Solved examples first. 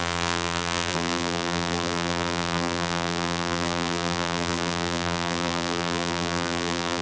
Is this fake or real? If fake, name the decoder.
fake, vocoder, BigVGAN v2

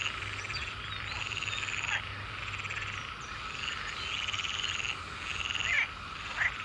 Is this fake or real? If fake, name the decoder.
real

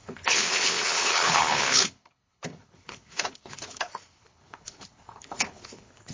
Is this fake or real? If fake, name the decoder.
fake, codec, HILCodec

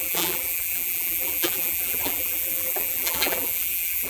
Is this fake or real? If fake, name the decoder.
fake, vocoder, BigVGAN v2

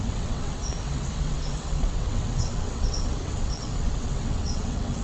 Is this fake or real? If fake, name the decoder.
fake, vocoder, WaveNeXt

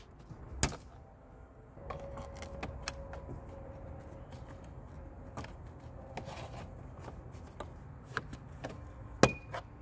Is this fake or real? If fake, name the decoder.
real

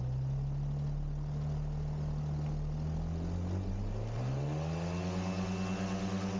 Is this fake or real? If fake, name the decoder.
real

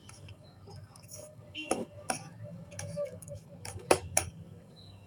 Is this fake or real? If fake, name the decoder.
fake, codec, DAC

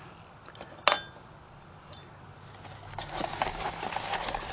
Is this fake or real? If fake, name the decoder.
real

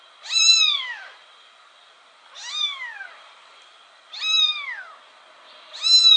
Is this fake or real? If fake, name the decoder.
real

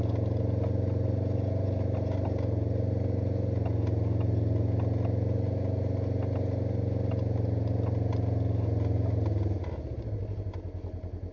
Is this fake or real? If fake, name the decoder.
real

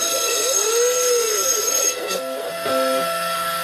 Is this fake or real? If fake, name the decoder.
fake, codec, SNAC